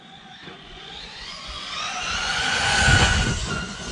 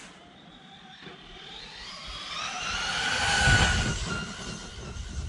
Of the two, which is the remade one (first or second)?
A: first